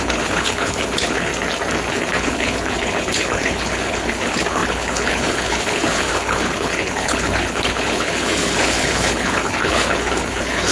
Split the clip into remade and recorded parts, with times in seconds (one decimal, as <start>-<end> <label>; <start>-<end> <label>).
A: 0.0-1.3 remade; 1.3-1.9 recorded; 1.9-10.7 remade